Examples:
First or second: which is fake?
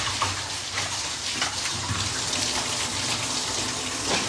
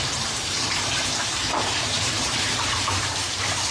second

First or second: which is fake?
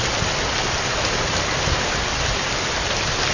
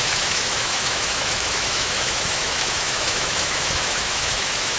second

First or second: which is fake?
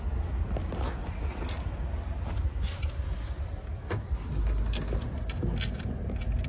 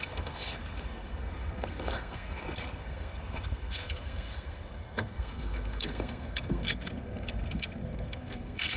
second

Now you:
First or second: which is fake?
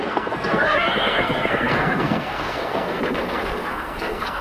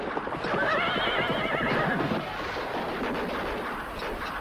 first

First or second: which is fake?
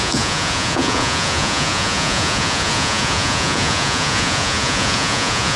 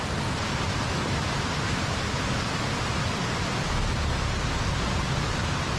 first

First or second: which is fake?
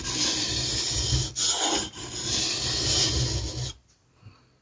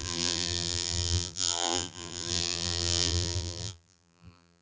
second